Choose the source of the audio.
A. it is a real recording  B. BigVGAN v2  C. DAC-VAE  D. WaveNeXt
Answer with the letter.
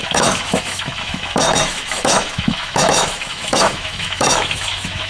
C